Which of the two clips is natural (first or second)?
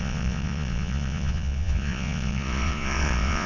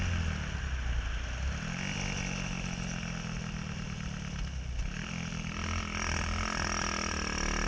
second